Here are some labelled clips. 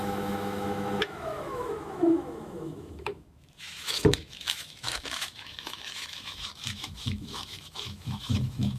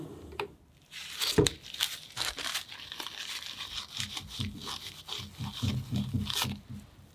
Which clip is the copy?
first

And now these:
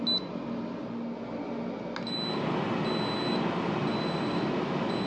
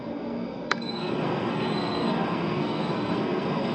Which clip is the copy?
second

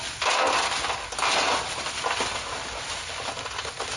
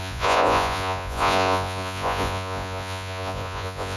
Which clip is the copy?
second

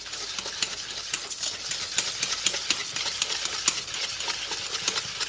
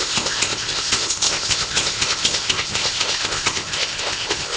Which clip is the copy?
second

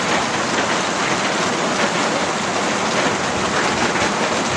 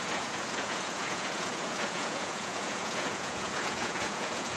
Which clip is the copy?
second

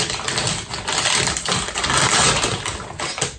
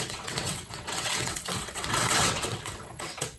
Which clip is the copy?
second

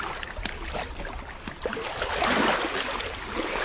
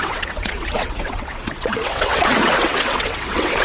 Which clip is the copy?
second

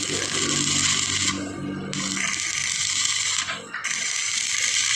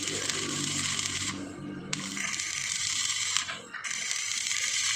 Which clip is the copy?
second